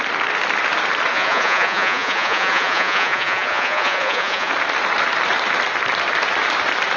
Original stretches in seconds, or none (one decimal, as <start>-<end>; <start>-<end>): 0.0-1.1; 4.5-7.0